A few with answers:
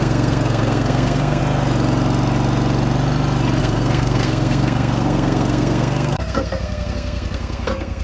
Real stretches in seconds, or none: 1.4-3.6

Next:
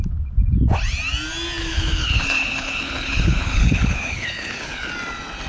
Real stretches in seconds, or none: 0.0-1.6; 4.9-5.5